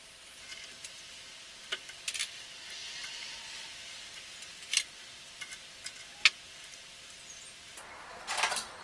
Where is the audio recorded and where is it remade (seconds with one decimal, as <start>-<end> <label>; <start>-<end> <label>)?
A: 0.0-2.2 recorded; 2.2-3.4 remade; 3.4-8.8 recorded